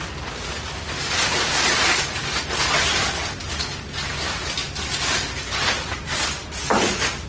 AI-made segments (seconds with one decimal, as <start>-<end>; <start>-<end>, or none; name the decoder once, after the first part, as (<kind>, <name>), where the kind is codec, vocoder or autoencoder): none